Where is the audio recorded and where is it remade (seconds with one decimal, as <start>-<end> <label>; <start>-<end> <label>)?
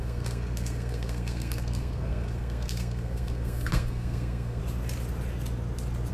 0.0-4.6 remade; 4.6-6.1 recorded